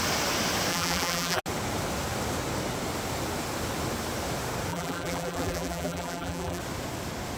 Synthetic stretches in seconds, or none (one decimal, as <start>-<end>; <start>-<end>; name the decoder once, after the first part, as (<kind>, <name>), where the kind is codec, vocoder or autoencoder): 0.7-1.4 (vocoder, BigVGAN v2); 4.7-6.6